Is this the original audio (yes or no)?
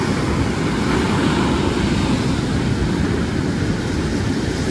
yes